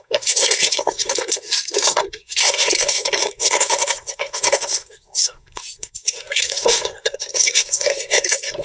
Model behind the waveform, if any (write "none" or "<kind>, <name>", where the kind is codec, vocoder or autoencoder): codec, SNAC